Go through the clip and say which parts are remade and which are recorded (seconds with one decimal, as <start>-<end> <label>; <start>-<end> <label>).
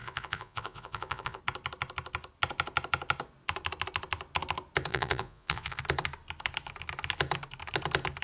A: 0.0-1.4 remade; 1.4-4.9 recorded; 4.9-5.8 remade; 5.8-8.2 recorded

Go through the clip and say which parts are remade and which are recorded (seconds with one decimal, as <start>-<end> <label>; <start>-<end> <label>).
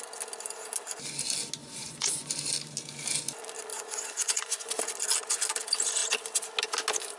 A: 0.0-1.6 recorded; 1.6-2.3 remade; 2.3-3.7 recorded; 3.7-4.7 remade; 4.7-7.2 recorded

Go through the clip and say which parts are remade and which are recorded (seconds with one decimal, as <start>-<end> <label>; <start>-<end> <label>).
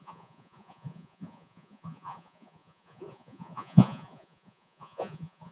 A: 0.0-5.5 remade